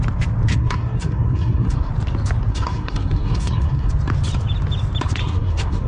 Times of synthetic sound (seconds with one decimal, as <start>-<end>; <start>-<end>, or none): 0.5-1.9; 2.5-3.9; 5.2-5.9